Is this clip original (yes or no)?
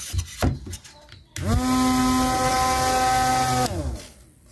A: yes